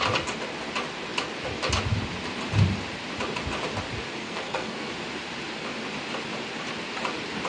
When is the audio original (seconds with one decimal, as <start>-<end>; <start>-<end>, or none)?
0.0-4.2; 4.9-7.5